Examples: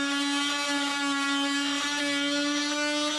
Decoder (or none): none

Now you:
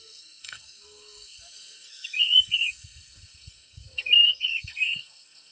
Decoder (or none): codec, SNAC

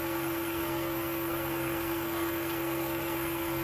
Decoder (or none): codec, SNAC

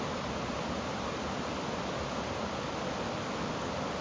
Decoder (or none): none